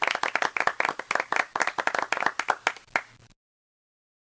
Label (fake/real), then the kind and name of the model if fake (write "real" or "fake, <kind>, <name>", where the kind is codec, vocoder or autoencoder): real